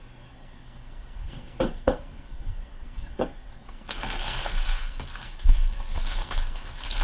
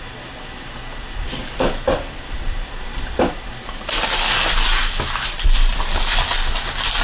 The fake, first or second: first